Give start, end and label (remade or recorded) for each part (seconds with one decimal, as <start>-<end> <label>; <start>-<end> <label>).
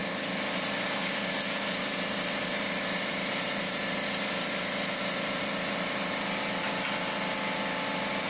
0.0-8.3 recorded